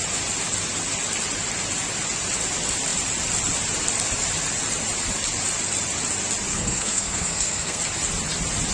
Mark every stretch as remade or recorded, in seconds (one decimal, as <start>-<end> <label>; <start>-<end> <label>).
0.0-6.5 recorded; 6.5-7.8 remade; 7.8-8.7 recorded